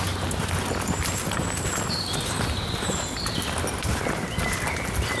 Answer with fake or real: real